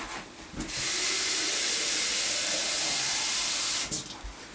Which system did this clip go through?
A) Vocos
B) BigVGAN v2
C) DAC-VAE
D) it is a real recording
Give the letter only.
D